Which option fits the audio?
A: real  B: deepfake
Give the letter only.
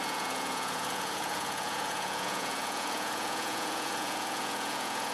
B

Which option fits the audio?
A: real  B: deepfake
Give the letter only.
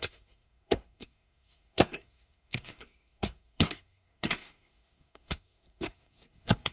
B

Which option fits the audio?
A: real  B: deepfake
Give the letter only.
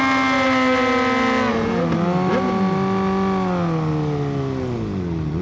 A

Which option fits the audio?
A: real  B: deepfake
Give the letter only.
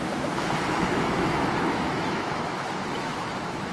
B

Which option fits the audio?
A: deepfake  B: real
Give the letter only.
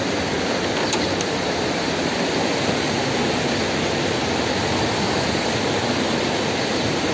B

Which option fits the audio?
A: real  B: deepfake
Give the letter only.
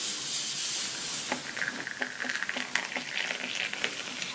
A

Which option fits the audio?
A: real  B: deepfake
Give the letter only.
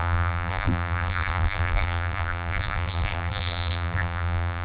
B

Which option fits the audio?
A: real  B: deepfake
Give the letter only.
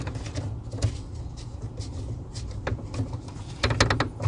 A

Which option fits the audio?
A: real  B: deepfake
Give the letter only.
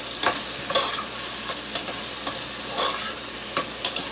A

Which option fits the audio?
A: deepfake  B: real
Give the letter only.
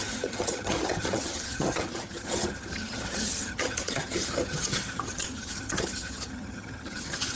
A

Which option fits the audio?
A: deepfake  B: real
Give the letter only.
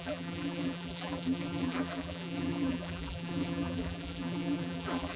A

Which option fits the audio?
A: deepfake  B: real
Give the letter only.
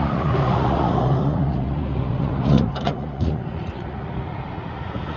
A